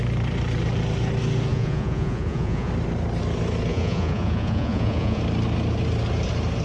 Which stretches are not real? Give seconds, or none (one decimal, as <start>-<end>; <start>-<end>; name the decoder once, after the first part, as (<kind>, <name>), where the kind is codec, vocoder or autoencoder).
1.5-2.7 (vocoder, Vocos); 3.7-5.2